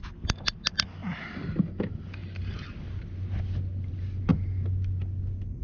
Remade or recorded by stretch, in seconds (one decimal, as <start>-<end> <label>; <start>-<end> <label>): 0.0-1.0 recorded; 1.0-1.6 remade; 1.6-5.6 recorded